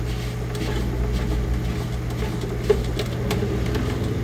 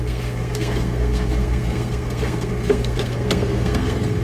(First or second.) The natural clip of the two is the first